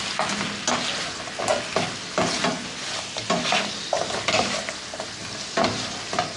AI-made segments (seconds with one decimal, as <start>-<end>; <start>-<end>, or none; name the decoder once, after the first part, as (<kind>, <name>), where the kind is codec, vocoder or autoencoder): 1.5-4.6 (vocoder, BigVGAN v2); 5.2-6.4